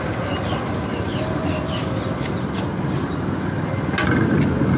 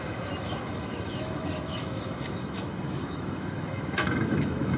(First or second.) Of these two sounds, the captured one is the first